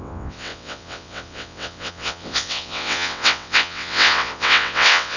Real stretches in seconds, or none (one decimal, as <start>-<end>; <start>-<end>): none